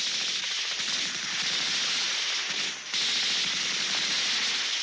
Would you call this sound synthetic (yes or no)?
no